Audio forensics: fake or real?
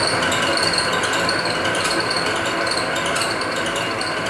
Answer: real